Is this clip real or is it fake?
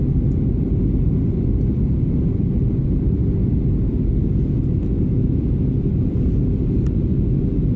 real